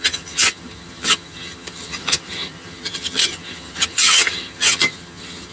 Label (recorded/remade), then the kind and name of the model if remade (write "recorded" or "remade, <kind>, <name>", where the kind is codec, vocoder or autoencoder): remade, vocoder, HiFi-GAN